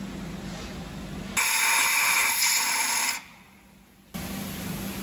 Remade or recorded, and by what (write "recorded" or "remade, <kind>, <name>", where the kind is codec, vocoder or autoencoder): recorded